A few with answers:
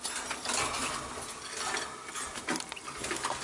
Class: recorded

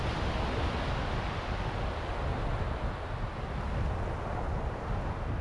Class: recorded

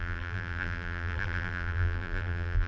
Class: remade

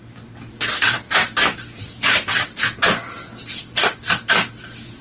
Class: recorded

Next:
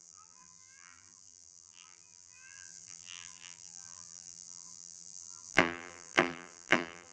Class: remade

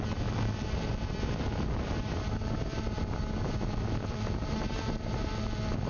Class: recorded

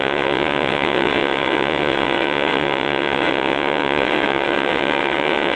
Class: remade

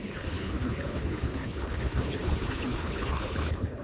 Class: remade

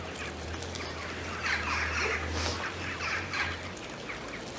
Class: recorded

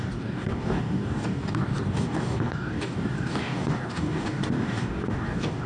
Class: remade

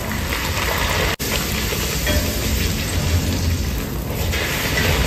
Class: recorded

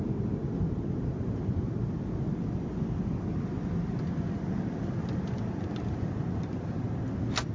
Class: recorded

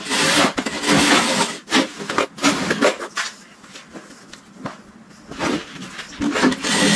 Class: recorded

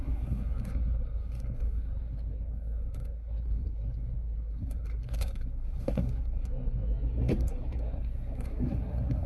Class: remade